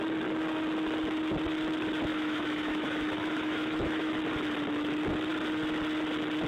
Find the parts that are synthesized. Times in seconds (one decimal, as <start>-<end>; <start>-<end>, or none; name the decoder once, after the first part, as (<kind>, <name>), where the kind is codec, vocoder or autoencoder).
2.1-4.1 (autoencoder, DAC-VAE)